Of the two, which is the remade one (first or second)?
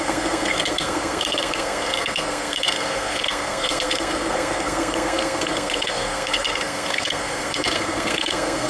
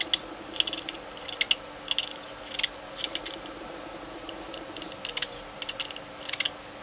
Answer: first